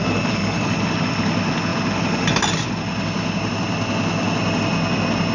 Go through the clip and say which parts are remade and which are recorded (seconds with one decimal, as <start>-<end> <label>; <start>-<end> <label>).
0.0-5.3 recorded